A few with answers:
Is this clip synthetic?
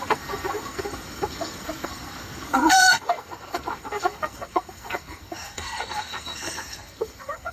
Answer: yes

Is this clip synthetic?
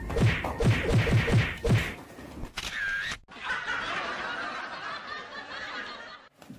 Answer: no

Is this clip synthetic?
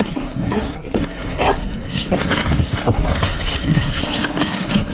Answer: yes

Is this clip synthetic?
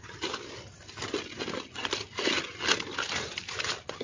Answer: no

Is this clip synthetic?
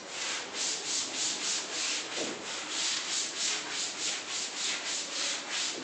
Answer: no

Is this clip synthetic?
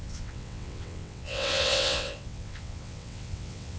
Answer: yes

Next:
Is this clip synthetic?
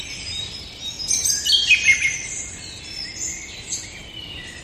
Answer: no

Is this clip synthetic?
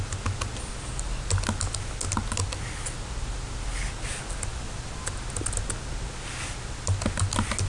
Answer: no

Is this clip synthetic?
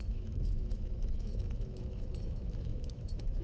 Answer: yes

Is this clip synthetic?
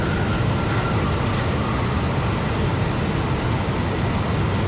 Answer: no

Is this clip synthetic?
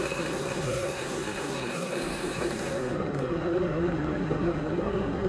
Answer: yes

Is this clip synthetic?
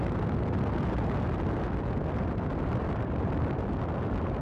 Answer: no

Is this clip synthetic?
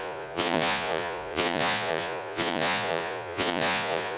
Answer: yes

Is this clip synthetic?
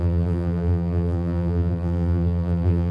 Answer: yes